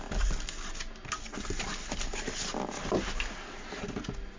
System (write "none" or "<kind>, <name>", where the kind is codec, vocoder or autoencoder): none